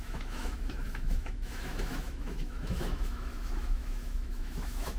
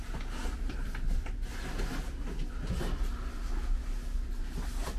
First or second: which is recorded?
second